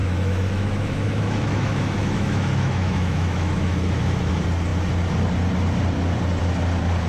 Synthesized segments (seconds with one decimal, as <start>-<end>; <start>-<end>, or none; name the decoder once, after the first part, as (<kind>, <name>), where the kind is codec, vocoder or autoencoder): 0.0-4.3 (autoencoder, DAC-VAE)